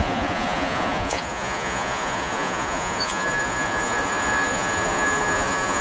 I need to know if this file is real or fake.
fake